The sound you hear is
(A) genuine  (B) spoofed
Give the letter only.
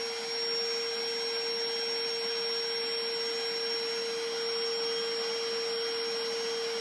A